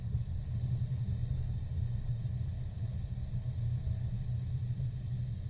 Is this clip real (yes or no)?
yes